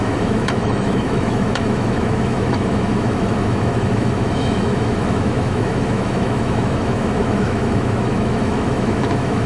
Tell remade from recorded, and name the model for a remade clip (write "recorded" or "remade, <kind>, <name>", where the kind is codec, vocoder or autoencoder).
remade, autoencoder, DAC-VAE